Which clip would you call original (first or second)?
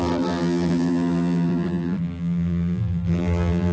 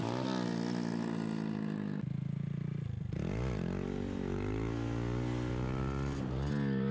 second